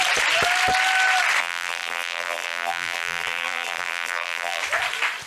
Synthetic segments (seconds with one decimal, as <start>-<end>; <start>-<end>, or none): 1.4-4.6